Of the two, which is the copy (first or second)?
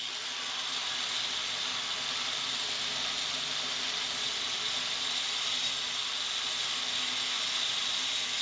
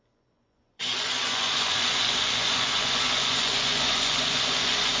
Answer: second